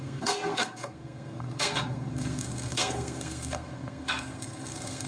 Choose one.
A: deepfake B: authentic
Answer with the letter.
A